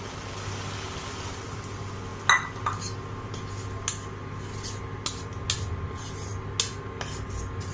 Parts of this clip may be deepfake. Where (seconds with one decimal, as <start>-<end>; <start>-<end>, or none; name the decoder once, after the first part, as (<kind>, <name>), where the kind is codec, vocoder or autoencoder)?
none